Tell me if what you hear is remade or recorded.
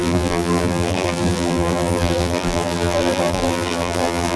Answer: remade